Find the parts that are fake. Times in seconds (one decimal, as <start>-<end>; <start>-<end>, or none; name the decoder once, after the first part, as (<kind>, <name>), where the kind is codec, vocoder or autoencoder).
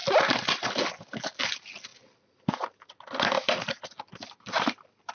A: none